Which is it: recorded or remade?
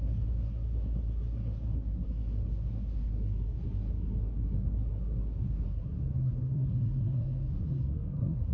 remade